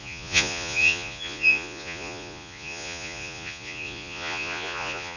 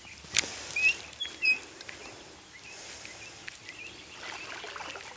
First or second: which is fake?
first